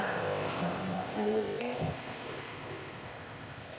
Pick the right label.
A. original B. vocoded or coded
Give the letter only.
B